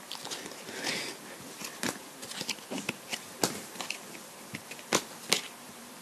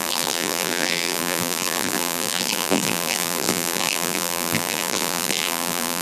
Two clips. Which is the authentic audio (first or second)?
first